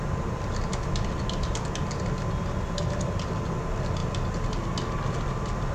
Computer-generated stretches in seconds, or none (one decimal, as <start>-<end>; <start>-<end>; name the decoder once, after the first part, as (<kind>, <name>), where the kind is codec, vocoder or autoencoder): none